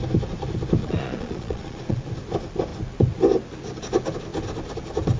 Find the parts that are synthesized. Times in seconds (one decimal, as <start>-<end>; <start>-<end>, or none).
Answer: 0.8-2.1